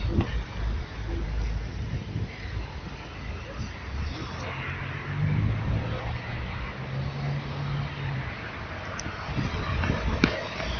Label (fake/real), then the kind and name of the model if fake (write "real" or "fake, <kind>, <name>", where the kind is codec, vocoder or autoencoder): real